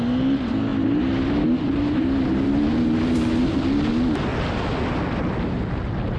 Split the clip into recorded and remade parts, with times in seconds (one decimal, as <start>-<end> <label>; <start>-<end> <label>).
0.0-6.2 recorded